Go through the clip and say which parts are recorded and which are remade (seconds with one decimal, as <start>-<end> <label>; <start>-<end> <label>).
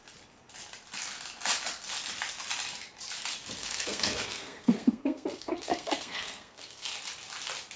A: 0.0-3.6 recorded; 3.6-7.0 remade; 7.0-7.8 recorded